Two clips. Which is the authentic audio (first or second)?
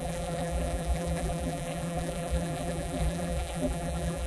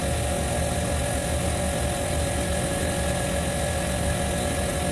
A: second